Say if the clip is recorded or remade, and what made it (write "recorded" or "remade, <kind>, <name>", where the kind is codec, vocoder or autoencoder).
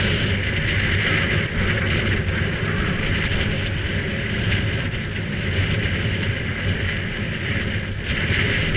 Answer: recorded